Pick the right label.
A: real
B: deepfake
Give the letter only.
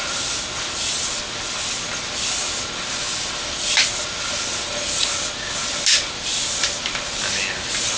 A